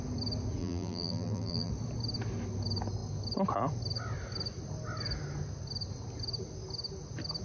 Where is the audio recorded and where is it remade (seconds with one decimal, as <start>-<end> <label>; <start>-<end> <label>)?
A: 0.0-0.6 recorded; 0.6-1.7 remade; 1.7-7.4 recorded